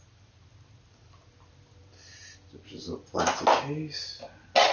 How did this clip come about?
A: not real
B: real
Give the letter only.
B